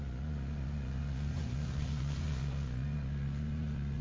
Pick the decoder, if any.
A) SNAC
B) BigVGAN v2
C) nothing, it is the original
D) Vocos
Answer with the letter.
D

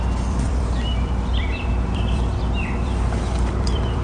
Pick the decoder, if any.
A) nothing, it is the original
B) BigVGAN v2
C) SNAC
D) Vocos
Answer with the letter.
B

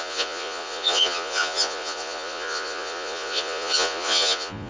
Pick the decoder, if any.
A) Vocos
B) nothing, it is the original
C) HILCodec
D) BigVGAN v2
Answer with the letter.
A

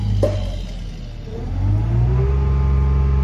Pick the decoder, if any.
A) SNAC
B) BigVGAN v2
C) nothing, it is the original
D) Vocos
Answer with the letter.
C